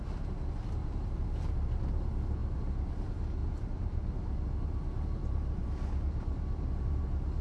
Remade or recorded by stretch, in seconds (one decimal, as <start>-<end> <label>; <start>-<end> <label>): 0.0-0.8 recorded; 0.8-1.8 remade; 1.8-2.4 recorded; 2.4-2.9 remade; 2.9-3.4 recorded; 3.4-4.1 remade; 4.1-5.2 recorded; 5.2-5.7 remade; 5.7-7.4 recorded